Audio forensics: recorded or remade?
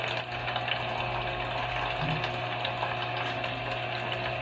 recorded